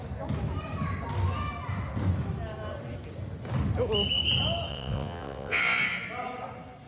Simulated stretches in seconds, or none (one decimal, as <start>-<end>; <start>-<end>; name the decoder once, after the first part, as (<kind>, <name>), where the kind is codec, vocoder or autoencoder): 4.7-5.6 (vocoder, WaveNeXt)